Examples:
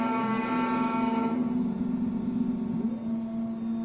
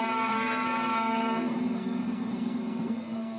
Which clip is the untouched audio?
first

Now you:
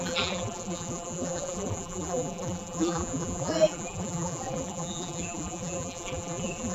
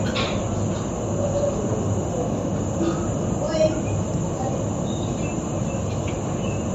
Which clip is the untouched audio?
second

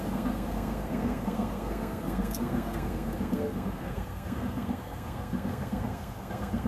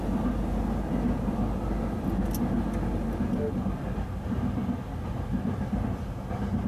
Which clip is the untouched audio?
second